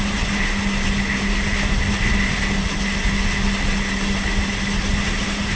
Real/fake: real